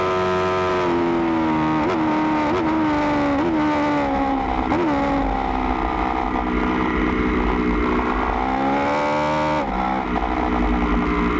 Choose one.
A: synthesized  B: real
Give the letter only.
B